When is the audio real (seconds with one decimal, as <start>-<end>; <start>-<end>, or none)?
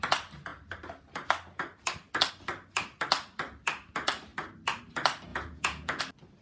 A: 0.0-5.3; 6.0-6.4